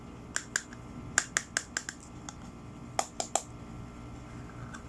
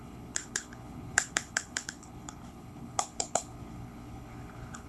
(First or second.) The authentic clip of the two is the first